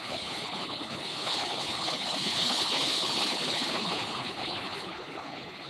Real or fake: fake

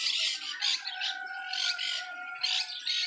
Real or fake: real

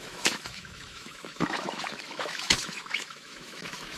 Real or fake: fake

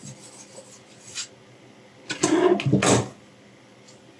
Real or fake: real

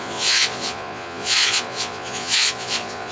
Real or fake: fake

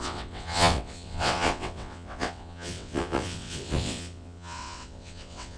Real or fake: fake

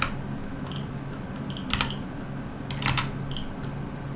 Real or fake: real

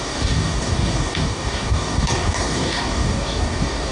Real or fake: fake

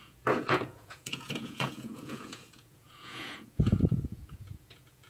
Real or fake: fake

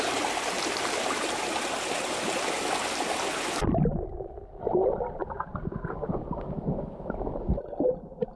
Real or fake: real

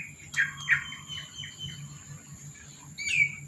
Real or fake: real